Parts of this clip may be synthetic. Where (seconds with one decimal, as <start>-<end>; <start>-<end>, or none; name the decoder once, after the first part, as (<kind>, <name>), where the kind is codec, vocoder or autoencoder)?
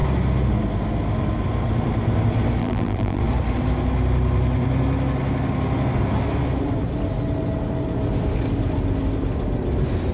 2.6-3.2 (vocoder, BigVGAN v2)